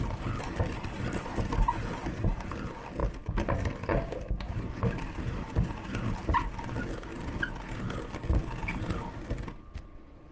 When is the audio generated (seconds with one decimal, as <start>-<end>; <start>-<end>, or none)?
none